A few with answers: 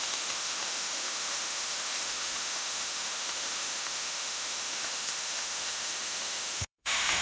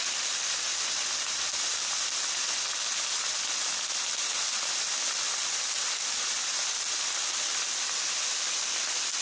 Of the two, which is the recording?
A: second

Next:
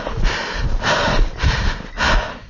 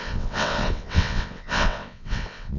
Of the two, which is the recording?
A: first